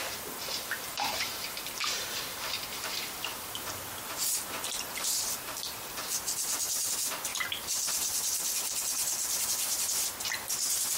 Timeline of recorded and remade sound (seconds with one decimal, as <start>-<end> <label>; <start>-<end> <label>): 0.0-2.2 remade; 2.2-3.3 recorded; 3.3-5.6 remade; 5.6-11.0 recorded